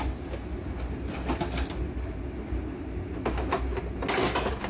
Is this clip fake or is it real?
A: real